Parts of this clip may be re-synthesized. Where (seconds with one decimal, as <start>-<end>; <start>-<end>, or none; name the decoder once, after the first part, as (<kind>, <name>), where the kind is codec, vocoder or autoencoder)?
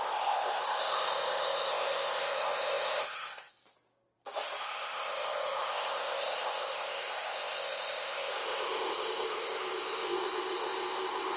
0.0-3.5 (codec, ZipCodec); 4.6-11.4